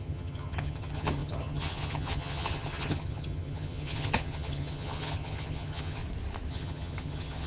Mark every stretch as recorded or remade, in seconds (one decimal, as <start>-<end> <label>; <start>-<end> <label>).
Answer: 0.0-6.0 remade; 6.0-6.5 recorded; 6.5-7.5 remade